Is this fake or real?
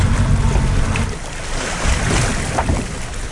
real